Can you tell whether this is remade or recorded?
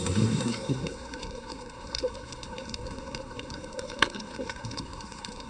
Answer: remade